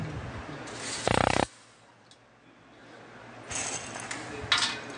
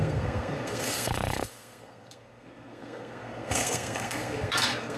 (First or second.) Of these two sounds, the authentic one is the first